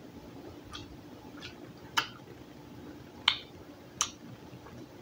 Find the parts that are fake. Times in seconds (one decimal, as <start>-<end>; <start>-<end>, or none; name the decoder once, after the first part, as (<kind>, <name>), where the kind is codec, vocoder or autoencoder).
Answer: none